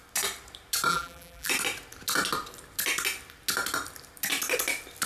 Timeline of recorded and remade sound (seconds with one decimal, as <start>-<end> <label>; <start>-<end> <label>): 0.0-0.9 recorded; 0.9-1.5 remade; 1.5-5.1 recorded